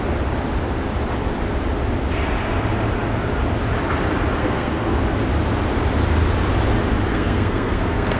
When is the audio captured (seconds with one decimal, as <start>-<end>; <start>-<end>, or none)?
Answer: 0.0-4.4; 5.0-7.1